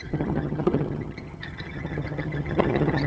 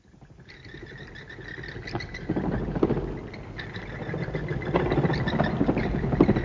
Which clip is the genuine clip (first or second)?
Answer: second